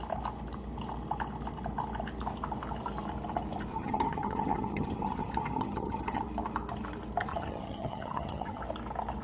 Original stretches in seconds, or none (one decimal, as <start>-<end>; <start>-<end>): 0.0-3.7; 6.2-7.3; 8.6-9.2